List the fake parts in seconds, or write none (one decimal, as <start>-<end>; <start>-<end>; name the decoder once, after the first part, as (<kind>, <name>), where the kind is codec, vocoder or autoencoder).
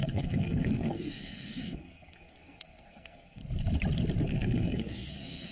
0.0-3.4 (codec, SNAC); 4.2-5.5